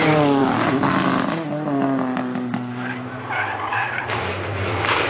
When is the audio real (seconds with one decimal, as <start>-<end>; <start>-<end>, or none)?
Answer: 0.0-3.7